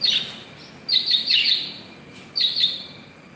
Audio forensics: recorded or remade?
recorded